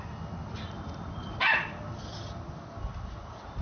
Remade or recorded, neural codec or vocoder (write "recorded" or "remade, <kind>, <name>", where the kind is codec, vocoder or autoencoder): recorded